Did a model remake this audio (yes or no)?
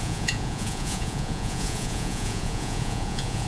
yes